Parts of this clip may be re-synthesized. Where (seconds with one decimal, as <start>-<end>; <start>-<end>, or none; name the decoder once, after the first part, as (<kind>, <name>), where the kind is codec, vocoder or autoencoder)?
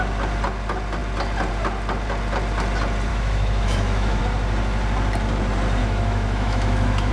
3.1-4.2 (autoencoder, DAC-VAE); 5.8-7.1